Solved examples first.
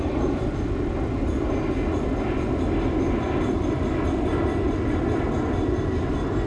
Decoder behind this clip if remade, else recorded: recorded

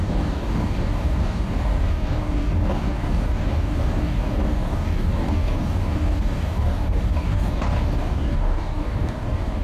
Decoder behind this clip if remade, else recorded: remade, codec, DAC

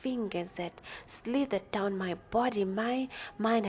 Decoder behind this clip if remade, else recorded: recorded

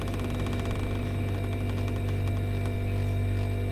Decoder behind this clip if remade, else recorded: recorded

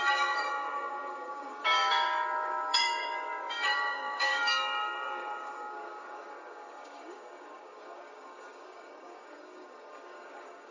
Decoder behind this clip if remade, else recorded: remade, codec, DAC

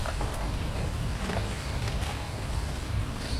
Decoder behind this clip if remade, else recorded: remade, codec, DAC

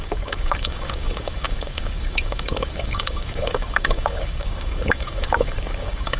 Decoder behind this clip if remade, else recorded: remade, codec, DAC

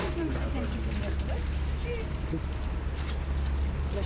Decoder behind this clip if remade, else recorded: recorded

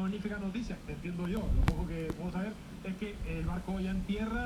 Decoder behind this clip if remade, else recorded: remade, codec, DAC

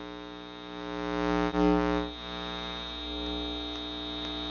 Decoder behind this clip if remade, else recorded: recorded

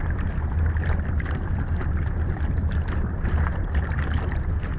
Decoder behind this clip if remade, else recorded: recorded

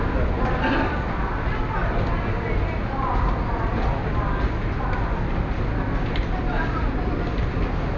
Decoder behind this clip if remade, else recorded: recorded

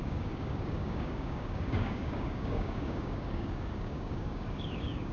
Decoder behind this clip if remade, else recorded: remade, codec, DAC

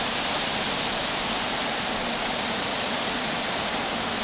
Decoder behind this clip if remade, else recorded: recorded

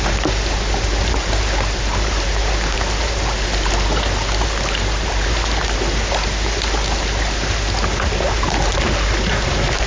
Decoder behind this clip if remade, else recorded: recorded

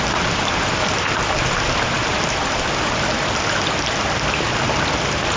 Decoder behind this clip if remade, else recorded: recorded